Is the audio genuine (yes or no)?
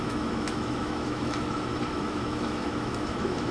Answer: no